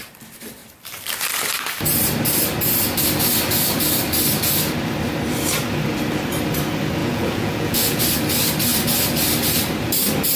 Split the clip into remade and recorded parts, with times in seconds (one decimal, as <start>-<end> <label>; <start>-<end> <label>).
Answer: 0.0-7.0 recorded; 7.0-8.0 remade; 8.0-10.4 recorded